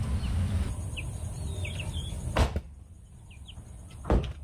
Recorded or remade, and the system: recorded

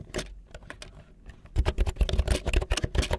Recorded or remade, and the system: recorded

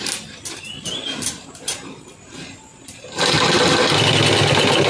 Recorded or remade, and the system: recorded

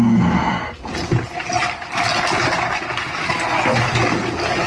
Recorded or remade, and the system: recorded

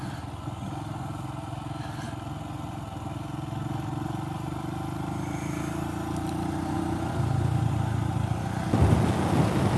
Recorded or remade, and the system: recorded